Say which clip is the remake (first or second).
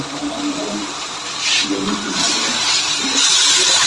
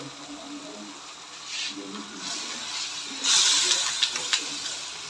first